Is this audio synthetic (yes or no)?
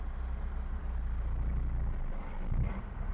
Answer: no